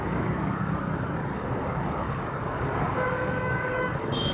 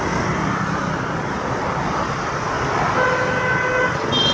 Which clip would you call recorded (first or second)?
second